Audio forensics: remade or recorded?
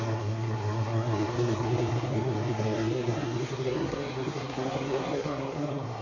remade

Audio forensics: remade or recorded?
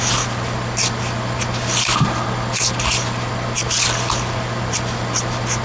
recorded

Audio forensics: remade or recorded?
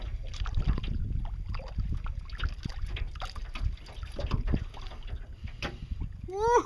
recorded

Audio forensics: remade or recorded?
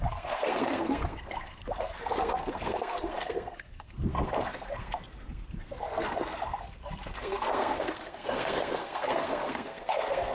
remade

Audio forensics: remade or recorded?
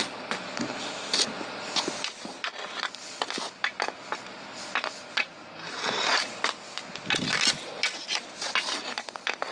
recorded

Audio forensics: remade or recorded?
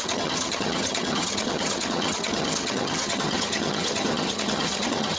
remade